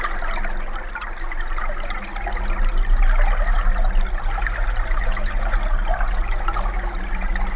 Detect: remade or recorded recorded